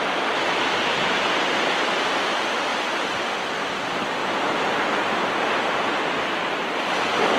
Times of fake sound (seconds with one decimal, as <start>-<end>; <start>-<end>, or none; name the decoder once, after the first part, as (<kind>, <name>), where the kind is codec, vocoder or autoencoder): none